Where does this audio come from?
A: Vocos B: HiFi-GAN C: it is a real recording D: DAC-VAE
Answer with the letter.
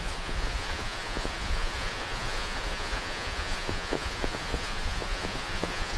A